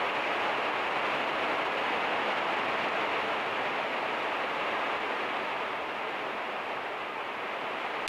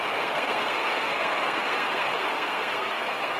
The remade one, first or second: second